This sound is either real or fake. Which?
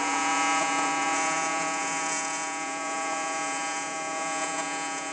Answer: fake